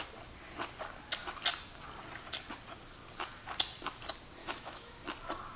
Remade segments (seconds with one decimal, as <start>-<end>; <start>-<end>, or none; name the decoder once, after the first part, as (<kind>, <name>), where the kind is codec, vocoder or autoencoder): 4.4-5.0 (autoencoder, DAC-VAE)